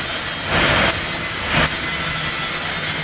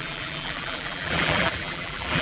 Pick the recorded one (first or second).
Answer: first